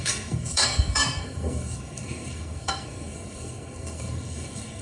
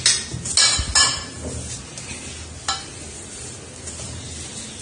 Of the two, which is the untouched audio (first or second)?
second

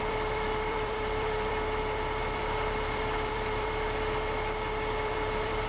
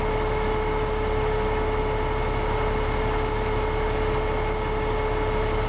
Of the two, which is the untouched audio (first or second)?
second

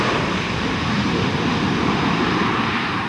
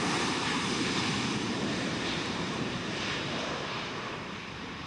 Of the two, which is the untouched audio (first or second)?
first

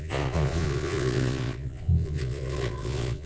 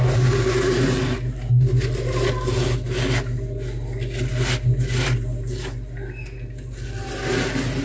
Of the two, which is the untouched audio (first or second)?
second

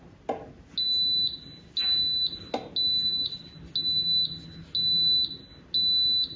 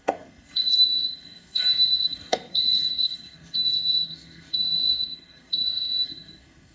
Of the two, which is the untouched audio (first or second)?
first